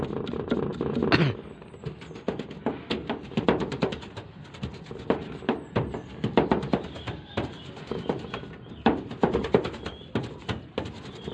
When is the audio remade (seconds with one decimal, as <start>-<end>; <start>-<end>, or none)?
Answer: none